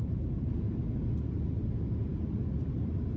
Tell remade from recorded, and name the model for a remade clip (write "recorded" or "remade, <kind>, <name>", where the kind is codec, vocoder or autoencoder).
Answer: recorded